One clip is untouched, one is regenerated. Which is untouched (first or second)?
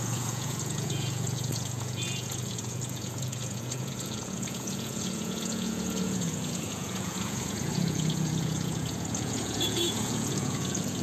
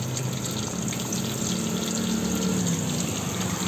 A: second